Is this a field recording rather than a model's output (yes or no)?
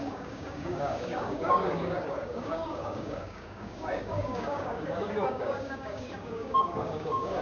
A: no